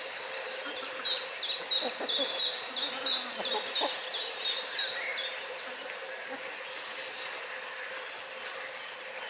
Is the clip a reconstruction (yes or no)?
no